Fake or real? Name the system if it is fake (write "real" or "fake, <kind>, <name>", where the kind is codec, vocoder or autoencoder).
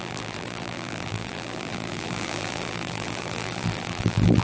fake, vocoder, BigVGAN v2